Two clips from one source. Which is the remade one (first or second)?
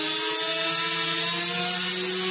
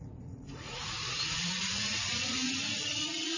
second